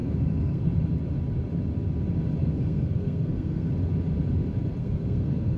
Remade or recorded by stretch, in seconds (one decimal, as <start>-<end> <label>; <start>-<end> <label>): 0.0-0.7 remade; 0.7-2.4 recorded; 2.4-3.7 remade; 3.7-4.8 recorded; 4.8-5.6 remade